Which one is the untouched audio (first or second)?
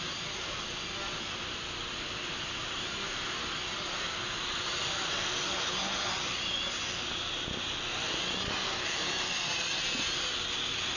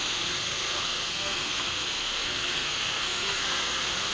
first